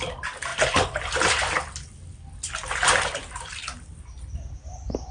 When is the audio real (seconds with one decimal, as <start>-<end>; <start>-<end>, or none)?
0.0-5.1

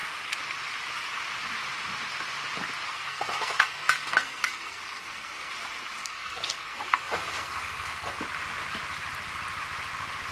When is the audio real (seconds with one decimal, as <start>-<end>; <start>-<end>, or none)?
0.0-2.9; 5.5-6.0; 8.2-10.3

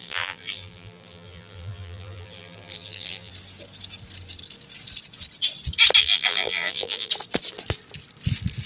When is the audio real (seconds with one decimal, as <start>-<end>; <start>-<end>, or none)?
3.3-6.0; 7.1-8.7